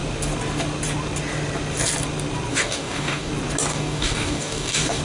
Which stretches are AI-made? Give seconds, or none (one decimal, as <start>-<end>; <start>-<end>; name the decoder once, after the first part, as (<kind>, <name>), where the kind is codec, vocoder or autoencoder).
2.5-3.3 (codec, DAC); 3.7-5.0